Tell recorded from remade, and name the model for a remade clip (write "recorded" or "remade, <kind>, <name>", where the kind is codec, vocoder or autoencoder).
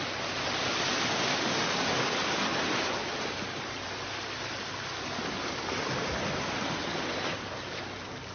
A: recorded